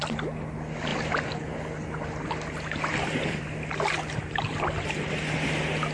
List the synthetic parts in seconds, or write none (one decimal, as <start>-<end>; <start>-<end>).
2.9-3.5